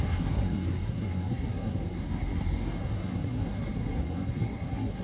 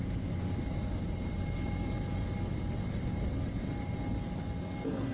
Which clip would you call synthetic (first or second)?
first